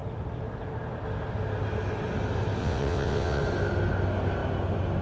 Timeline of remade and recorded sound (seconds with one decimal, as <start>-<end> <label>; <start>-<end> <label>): 0.0-2.6 recorded; 2.6-3.4 remade; 3.4-5.0 recorded